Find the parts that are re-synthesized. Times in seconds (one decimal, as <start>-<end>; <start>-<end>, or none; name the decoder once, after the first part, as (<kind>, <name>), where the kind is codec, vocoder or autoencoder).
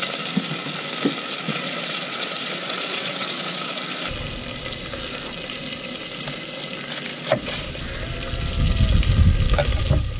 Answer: 1.5-3.8 (vocoder, Vocos); 7.1-7.7